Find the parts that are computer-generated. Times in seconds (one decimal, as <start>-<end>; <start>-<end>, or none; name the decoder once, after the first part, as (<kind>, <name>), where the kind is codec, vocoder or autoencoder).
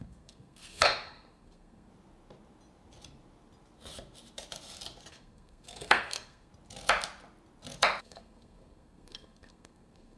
0.0-1.9 (codec, SNAC); 5.1-6.5; 8.0-10.2